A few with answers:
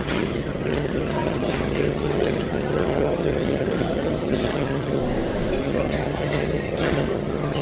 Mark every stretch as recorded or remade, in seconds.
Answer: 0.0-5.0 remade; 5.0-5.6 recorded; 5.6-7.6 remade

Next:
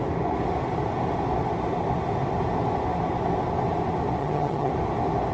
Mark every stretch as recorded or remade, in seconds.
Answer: 0.0-4.2 recorded; 4.2-4.7 remade; 4.7-5.3 recorded

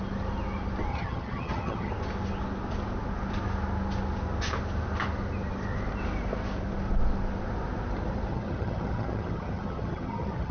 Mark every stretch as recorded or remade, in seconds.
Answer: 0.0-0.9 recorded; 0.9-1.9 remade; 1.9-8.3 recorded; 8.3-10.5 remade

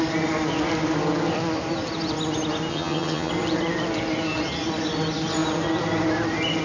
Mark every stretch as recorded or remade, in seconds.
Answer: 0.0-2.7 recorded; 2.7-3.3 remade; 3.3-6.6 recorded

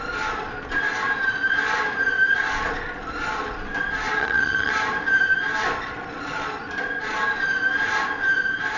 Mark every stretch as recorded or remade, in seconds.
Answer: 0.0-4.2 recorded; 4.2-4.7 remade; 4.7-8.8 recorded

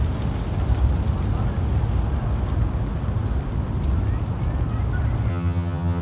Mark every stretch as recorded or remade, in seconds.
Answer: 0.0-5.3 recorded; 5.3-6.0 remade

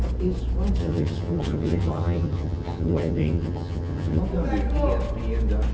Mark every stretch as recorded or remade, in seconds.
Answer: 0.0-0.8 recorded; 0.8-4.2 remade; 4.2-5.7 recorded

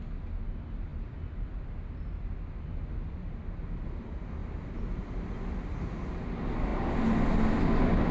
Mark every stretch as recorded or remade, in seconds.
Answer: 0.0-8.1 recorded